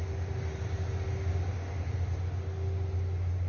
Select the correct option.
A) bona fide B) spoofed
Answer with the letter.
A